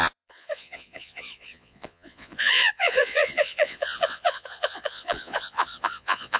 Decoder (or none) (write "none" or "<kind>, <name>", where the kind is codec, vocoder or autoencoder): vocoder, Vocos